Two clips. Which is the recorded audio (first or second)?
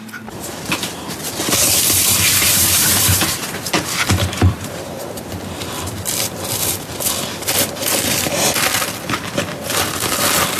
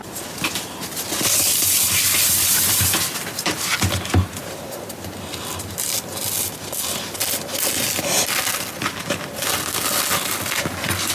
second